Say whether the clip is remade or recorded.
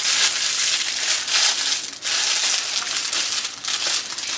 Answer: recorded